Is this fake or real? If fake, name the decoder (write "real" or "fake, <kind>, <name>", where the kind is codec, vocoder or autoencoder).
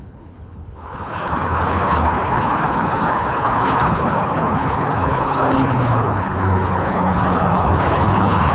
fake, codec, HILCodec